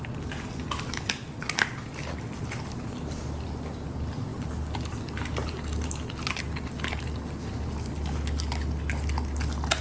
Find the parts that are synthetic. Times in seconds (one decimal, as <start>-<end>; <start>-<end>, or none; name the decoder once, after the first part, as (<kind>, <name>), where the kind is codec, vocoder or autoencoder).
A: none